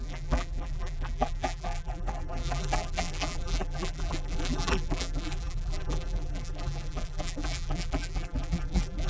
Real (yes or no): no